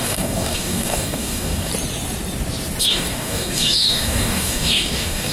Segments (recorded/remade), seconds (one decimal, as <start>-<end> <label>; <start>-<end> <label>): 0.0-1.7 remade; 1.7-2.8 recorded; 2.8-5.3 remade